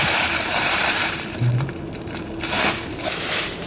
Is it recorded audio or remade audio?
remade